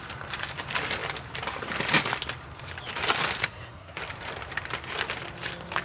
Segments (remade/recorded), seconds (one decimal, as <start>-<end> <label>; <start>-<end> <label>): 0.0-3.4 recorded; 3.4-4.0 remade; 4.0-5.8 recorded